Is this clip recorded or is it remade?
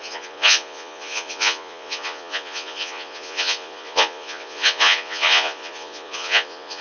remade